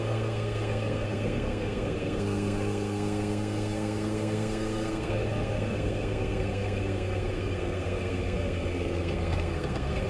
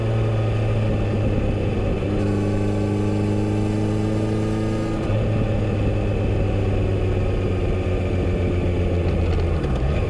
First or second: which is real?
second